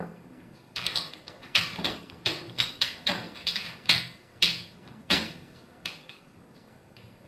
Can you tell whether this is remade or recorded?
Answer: remade